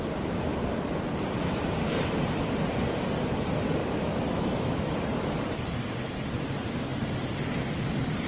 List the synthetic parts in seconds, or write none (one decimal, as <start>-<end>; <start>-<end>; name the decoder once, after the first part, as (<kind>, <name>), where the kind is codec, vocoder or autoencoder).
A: 3.8-4.9 (autoencoder, DAC-VAE)